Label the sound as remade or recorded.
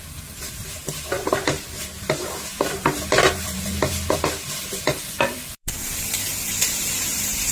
remade